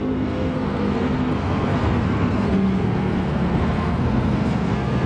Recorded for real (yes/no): no